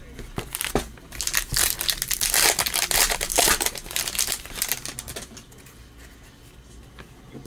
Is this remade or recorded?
recorded